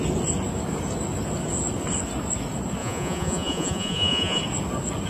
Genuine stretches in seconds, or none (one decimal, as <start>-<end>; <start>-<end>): 0.0-2.8; 4.4-5.1